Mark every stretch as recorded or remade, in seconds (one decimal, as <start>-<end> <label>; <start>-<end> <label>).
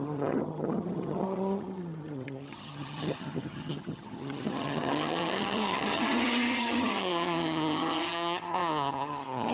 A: 0.0-9.5 remade